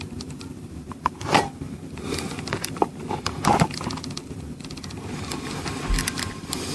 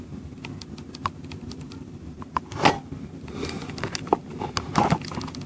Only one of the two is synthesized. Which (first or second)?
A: first